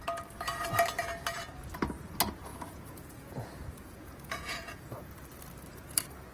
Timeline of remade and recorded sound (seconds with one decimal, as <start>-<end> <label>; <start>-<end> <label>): 0.0-2.5 recorded; 2.5-5.1 remade; 5.1-6.3 recorded